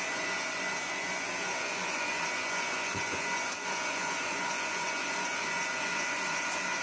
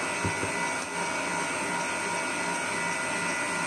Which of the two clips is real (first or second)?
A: second